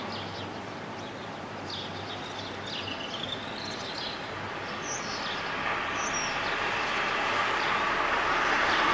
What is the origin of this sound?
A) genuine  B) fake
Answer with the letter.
A